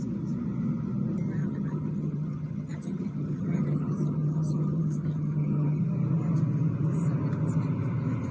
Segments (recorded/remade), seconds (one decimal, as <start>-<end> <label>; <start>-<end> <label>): 0.0-1.4 recorded; 1.4-5.8 remade; 5.8-8.3 recorded